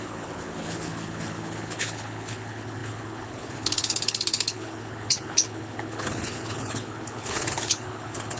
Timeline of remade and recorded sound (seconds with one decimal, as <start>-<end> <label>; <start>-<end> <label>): 0.0-8.4 remade